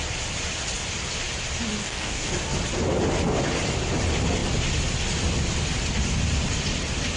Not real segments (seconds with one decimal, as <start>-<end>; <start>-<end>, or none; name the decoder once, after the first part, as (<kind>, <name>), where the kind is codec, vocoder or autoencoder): 1.8-2.3 (codec, DAC)